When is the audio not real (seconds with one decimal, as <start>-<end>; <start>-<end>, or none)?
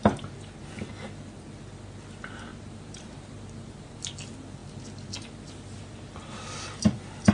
2.5-4.0